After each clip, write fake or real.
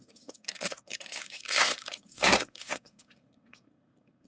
fake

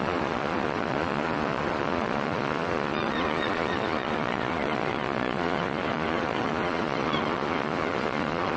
fake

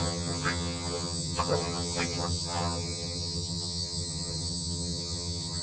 fake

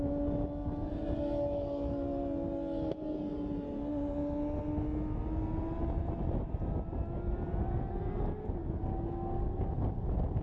real